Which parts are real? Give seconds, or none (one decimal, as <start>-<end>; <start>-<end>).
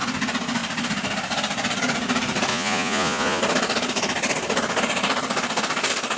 0.0-2.5; 3.4-6.2